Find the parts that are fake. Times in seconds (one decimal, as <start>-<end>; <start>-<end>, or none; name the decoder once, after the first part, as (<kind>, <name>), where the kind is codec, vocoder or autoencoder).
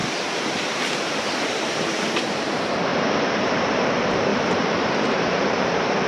0.0-2.5 (vocoder, BigVGAN v2); 2.9-3.8; 4.3-6.1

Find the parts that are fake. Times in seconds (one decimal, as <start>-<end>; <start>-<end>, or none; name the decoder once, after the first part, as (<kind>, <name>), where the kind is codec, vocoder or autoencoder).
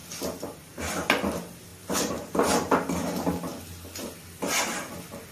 0.0-0.8 (vocoder, BigVGAN v2); 1.7-2.3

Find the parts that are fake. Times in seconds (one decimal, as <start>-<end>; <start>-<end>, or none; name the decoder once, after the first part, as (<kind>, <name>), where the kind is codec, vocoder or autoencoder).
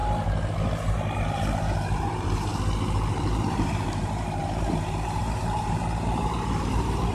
1.2-2.5 (vocoder, BigVGAN v2); 3.1-7.1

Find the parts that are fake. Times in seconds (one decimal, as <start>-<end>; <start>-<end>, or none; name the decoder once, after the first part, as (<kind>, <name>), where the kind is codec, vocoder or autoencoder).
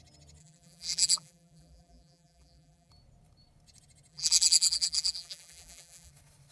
0.4-2.9 (vocoder, BigVGAN v2); 4.1-6.1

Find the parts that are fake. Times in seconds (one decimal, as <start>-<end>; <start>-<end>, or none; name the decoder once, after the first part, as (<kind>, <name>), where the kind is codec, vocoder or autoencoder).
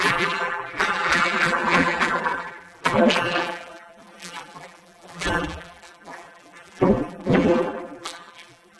0.0-8.8 (vocoder, BigVGAN v2)